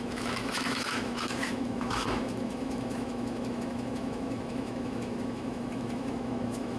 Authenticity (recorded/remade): remade